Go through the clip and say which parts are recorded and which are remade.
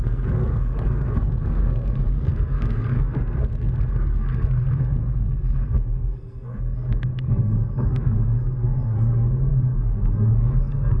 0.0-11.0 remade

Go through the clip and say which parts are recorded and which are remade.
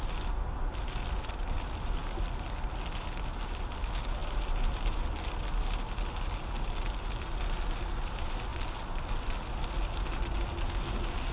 0.0-11.3 recorded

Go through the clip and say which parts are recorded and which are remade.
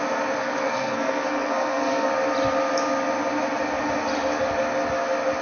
0.0-0.4 recorded; 0.4-2.1 remade; 2.1-5.4 recorded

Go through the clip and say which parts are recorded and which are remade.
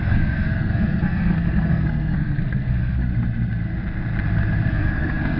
0.0-3.1 remade; 3.1-4.7 recorded; 4.7-5.4 remade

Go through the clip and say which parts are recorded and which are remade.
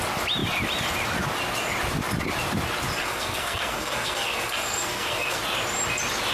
0.0-3.0 recorded; 3.0-5.4 remade; 5.4-6.3 recorded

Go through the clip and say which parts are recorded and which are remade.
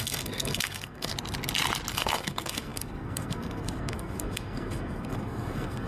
0.0-1.1 remade; 1.1-1.9 recorded; 1.9-5.9 remade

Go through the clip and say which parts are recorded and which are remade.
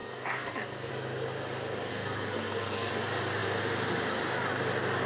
0.0-0.9 remade; 0.9-1.9 recorded; 1.9-2.9 remade; 2.9-5.1 recorded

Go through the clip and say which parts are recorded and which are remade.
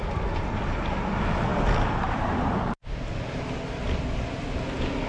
0.0-5.1 recorded